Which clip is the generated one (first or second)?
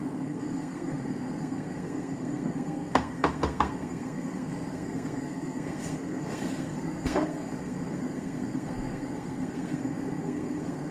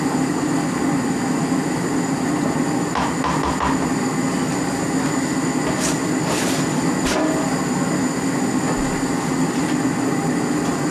first